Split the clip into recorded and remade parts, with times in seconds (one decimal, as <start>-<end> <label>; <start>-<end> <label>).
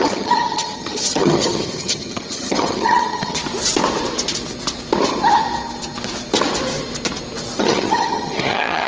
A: 0.0-3.4 remade; 3.4-7.6 recorded; 7.6-8.9 remade